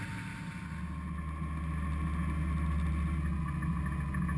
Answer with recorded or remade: recorded